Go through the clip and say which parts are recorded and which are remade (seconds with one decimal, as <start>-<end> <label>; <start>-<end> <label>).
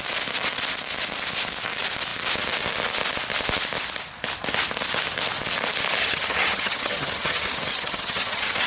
0.0-6.0 recorded; 6.0-8.7 remade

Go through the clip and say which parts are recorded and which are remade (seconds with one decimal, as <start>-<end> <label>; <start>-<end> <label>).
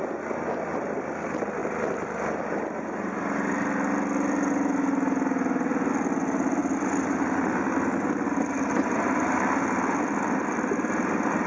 0.0-11.5 recorded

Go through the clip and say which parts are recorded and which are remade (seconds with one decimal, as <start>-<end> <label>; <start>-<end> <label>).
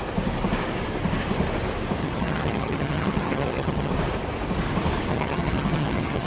0.0-2.0 recorded; 2.0-3.9 remade; 3.9-5.1 recorded; 5.1-6.3 remade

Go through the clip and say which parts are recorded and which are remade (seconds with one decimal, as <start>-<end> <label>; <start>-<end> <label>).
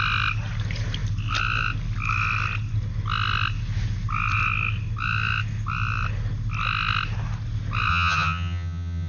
0.0-7.9 recorded; 7.9-9.1 remade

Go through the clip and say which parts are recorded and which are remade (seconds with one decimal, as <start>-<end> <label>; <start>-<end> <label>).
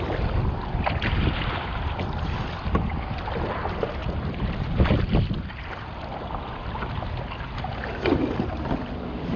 0.0-9.4 recorded